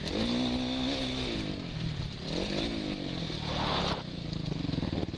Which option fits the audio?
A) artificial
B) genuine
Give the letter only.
B